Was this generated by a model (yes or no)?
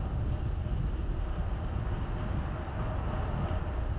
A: no